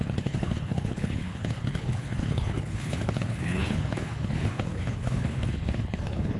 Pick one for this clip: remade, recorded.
remade